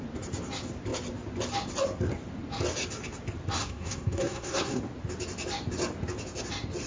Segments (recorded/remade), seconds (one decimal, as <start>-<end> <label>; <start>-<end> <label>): 0.0-3.6 recorded; 3.6-4.8 remade; 4.8-6.9 recorded